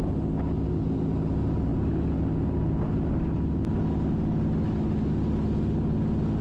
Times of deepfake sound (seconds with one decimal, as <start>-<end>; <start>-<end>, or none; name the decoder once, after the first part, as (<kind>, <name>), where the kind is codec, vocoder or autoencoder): none

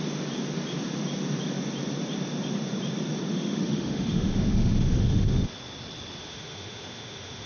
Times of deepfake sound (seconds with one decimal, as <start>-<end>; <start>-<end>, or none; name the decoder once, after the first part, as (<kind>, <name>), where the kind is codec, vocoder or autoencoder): 3.3-5.5 (autoencoder, DAC-VAE); 6.2-7.5

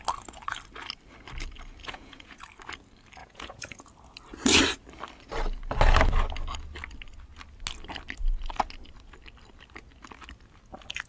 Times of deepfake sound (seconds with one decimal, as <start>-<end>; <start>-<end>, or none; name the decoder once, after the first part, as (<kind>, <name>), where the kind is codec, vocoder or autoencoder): 1.8-2.4 (vocoder, Vocos); 3.2-3.9

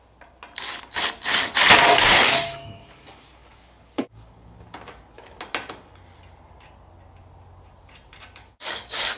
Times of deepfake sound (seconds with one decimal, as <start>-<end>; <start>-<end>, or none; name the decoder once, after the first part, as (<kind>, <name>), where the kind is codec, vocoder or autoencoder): 1.8-5.4 (codec, DAC); 8.4-9.2

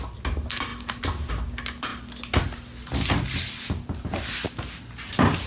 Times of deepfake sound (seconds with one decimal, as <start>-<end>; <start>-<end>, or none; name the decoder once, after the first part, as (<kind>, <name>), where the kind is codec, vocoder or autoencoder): none